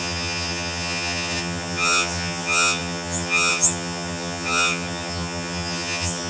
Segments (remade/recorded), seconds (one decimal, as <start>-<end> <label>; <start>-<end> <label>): 0.0-6.3 remade